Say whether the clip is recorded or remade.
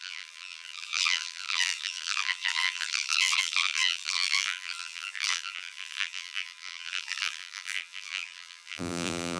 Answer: remade